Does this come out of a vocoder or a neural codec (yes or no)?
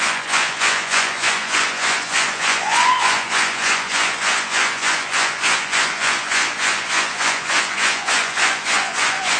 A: yes